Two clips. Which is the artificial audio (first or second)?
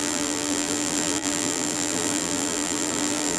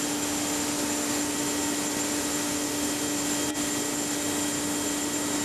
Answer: first